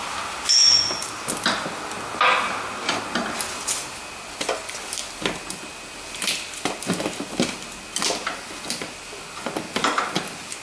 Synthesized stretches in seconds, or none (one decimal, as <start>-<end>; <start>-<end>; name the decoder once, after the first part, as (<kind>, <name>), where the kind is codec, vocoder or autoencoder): none

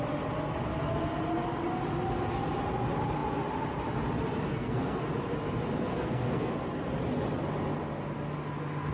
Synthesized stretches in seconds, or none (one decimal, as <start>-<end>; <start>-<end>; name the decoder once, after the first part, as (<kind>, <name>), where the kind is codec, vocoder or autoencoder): 4.5-5.0 (codec, SNAC); 5.9-6.5

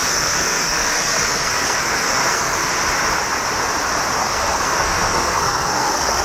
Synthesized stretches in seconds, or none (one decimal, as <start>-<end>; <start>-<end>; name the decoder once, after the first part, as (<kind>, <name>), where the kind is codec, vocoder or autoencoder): 0.0-2.7 (codec, SNAC); 4.2-6.2

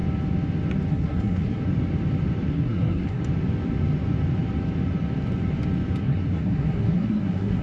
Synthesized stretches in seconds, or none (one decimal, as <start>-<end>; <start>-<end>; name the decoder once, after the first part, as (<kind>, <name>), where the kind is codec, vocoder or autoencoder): 0.9-1.6 (codec, SNAC); 2.5-3.2; 6.0-7.6

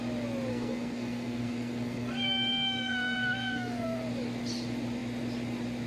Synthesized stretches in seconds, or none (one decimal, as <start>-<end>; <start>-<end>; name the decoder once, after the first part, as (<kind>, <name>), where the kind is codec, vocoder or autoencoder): 0.5-4.0 (codec, SNAC)

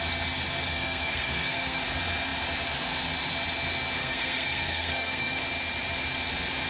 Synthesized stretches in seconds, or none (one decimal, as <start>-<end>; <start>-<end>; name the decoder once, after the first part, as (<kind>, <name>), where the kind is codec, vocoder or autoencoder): 0.7-1.8 (codec, SNAC); 4.0-5.4

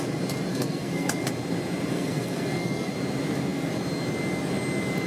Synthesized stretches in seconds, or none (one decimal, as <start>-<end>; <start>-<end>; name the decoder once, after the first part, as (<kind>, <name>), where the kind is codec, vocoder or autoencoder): 0.5-1.3 (codec, SNAC); 1.9-2.9